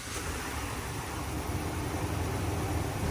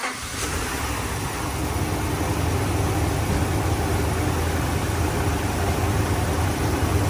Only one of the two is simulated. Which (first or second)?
first